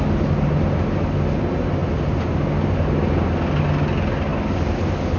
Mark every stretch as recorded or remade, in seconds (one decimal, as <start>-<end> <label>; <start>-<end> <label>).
0.0-5.2 recorded